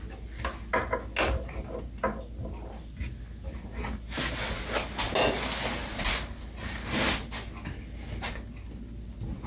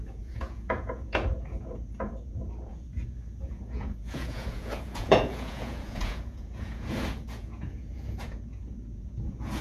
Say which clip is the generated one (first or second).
second